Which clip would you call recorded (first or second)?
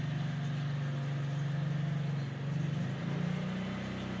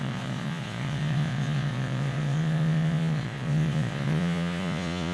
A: first